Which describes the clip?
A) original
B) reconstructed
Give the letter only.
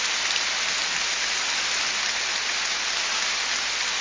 A